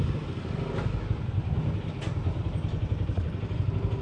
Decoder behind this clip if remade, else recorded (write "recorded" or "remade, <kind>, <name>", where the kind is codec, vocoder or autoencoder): recorded